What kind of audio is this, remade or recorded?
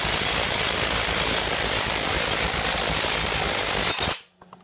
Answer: recorded